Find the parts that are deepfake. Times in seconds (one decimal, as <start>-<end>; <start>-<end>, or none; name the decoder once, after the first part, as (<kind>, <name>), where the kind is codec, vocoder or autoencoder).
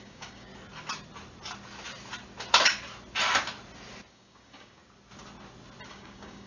0.0-0.5 (codec, DAC); 4.1-4.8; 5.9-6.5